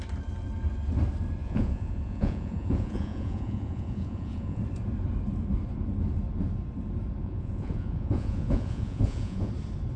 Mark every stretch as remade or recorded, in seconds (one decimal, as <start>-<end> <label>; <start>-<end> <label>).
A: 0.0-1.4 recorded; 1.4-4.6 remade; 4.6-7.2 recorded; 7.2-9.5 remade; 9.5-10.0 recorded